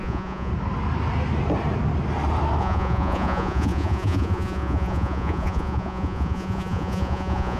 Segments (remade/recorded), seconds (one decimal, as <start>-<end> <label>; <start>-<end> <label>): 0.0-0.5 remade; 0.5-2.6 recorded; 2.6-7.6 remade